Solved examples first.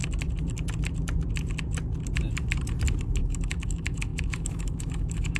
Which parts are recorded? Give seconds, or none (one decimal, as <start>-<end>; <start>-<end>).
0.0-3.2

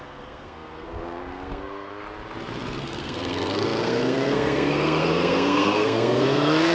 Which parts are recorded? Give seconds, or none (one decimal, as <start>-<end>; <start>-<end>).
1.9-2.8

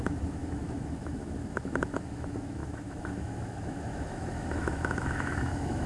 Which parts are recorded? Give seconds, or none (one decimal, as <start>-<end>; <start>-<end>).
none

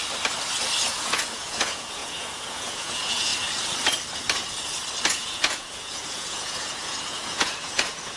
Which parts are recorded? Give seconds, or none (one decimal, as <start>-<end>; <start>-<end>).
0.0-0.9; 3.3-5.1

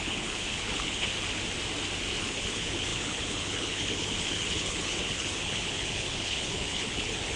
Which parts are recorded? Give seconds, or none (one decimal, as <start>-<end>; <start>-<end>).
1.1-2.2